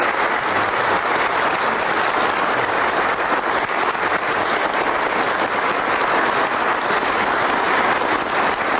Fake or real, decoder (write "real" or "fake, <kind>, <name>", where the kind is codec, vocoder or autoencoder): real